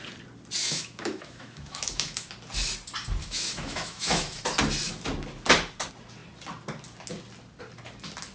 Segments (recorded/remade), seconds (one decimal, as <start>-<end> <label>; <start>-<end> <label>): 0.0-0.6 recorded; 0.6-2.3 remade; 2.3-3.2 recorded; 3.2-4.4 remade; 4.4-8.3 recorded